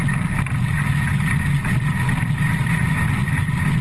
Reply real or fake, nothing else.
real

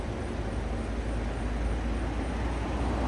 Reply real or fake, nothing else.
real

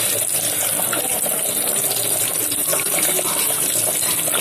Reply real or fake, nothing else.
fake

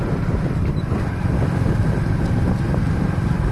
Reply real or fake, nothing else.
real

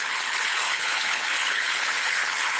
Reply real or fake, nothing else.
fake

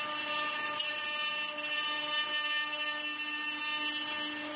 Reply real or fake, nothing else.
real